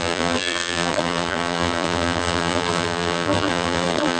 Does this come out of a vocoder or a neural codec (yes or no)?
yes